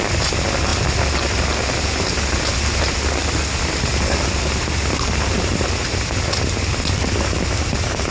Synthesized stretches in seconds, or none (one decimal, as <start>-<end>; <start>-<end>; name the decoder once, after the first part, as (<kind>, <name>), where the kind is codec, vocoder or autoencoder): none